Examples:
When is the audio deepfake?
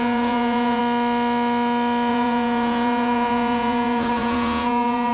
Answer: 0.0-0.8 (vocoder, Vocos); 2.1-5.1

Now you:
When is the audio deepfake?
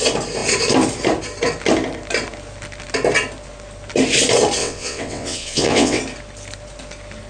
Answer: 4.6-6.0 (vocoder, WaveNeXt)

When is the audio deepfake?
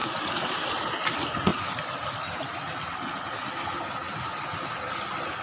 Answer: none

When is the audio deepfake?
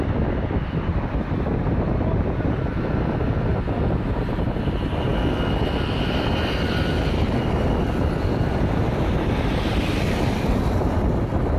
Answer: none